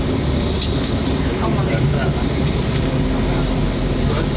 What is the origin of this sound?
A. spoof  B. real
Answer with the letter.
B